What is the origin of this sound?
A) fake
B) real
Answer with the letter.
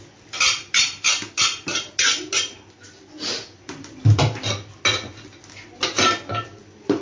B